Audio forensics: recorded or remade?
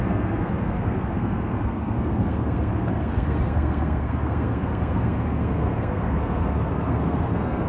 remade